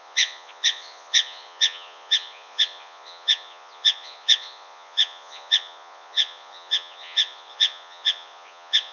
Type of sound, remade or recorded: remade